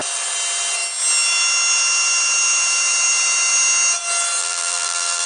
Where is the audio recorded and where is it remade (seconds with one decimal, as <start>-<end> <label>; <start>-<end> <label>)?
0.0-4.4 recorded; 4.4-5.3 remade